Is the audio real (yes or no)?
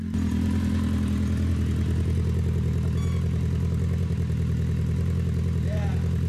yes